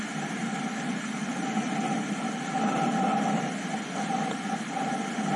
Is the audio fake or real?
real